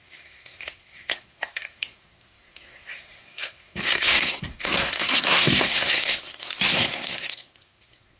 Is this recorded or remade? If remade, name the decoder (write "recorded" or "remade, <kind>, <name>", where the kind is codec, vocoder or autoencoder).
remade, codec, SNAC